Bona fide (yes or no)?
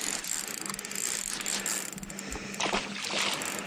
yes